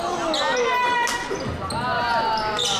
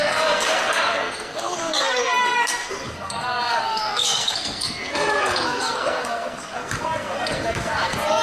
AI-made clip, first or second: second